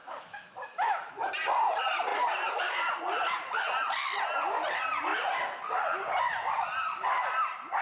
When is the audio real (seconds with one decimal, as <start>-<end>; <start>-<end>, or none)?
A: 1.3-7.8

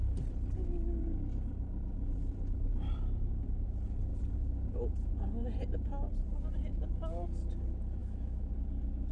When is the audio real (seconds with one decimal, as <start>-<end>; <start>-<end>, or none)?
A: 0.0-8.0; 8.5-9.1

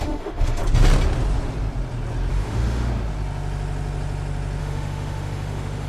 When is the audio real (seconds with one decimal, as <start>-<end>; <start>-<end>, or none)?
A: 0.6-2.3; 2.9-4.6

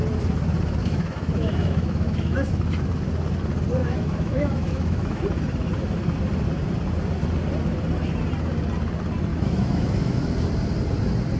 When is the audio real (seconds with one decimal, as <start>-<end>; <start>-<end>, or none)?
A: 0.0-0.8; 2.5-3.8; 5.2-9.3; 10.2-11.4